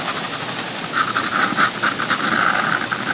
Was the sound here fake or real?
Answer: real